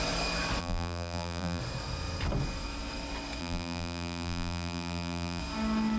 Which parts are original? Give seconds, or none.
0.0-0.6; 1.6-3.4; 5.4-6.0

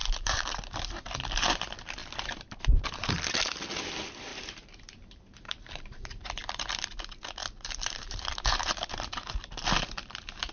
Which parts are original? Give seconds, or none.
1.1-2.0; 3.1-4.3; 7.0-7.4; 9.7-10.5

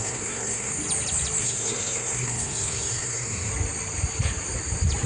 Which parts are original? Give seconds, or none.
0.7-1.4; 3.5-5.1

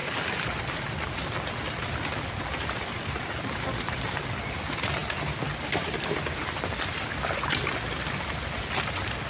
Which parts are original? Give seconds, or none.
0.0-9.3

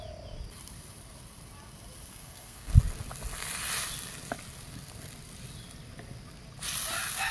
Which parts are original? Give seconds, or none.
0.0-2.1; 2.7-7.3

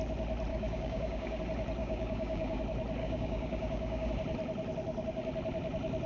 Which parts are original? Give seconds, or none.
0.0-0.5; 1.4-1.8; 2.6-3.0; 4.1-6.1

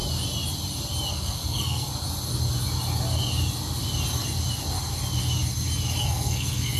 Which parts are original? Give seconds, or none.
0.0-1.1; 1.9-6.0

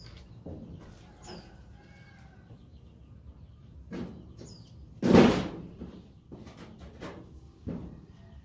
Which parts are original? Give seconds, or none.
0.0-8.4